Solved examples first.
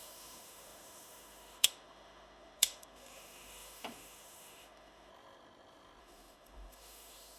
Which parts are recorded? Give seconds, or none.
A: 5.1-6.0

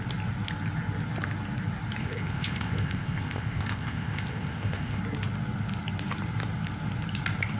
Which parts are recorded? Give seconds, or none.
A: 0.0-2.0; 5.0-7.6

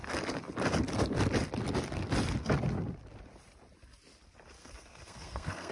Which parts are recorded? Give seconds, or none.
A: 0.0-4.6